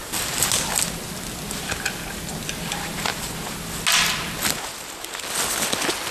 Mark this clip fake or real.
real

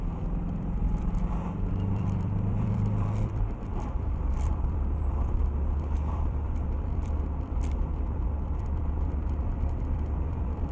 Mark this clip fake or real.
fake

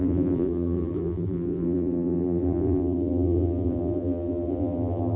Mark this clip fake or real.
fake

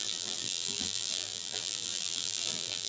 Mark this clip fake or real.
fake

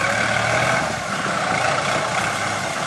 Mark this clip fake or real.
real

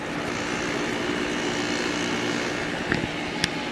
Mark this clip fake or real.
real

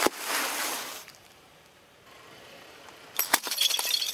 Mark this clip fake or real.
fake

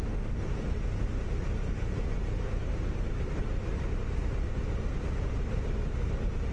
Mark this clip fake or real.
real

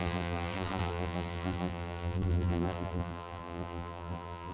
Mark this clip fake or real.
fake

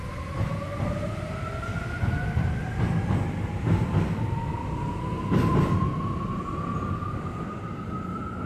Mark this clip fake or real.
real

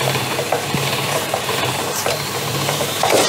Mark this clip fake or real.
fake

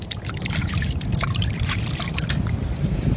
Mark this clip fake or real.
fake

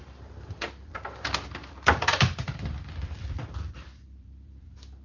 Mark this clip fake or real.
fake